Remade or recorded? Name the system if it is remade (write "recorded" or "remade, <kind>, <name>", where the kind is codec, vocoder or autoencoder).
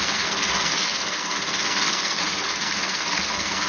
remade, codec, SNAC